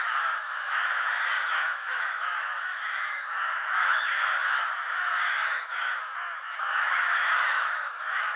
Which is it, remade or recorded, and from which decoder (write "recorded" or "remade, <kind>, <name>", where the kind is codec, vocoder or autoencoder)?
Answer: remade, autoencoder, DAC-VAE